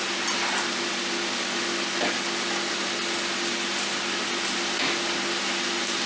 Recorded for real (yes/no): yes